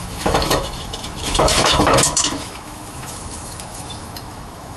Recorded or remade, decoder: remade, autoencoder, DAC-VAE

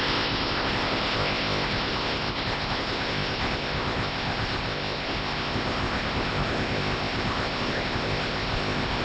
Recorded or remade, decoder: remade, codec, ZipCodec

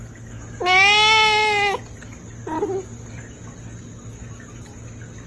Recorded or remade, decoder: recorded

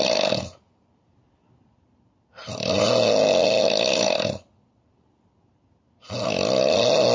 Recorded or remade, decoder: recorded